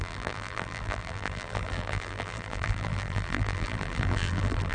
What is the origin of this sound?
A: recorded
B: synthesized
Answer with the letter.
B